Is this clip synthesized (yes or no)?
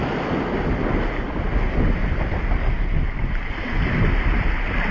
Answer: no